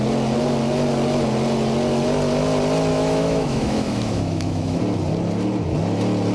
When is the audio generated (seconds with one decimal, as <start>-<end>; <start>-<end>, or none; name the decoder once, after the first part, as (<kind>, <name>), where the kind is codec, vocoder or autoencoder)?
2.9-4.8 (autoencoder, DAC-VAE)